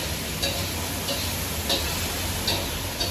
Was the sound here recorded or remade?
recorded